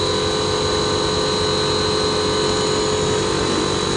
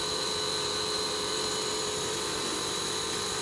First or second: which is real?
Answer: first